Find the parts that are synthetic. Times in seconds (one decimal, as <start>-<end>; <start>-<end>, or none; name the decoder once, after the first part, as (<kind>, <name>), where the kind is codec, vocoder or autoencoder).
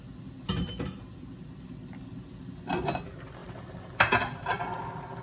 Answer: none